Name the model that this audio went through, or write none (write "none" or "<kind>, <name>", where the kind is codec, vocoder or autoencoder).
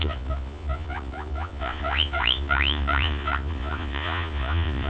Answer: vocoder, Vocos